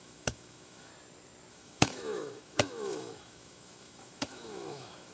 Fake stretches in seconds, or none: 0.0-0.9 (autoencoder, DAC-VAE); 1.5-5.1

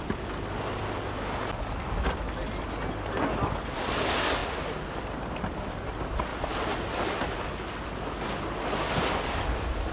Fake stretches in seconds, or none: none

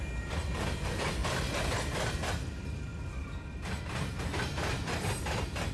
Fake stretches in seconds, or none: none

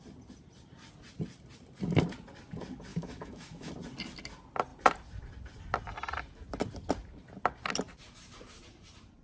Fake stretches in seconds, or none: 2.9-3.7 (autoencoder, DAC-VAE)

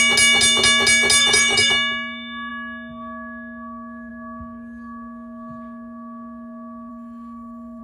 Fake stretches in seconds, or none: 1.2-1.7 (autoencoder, DAC-VAE); 6.9-7.8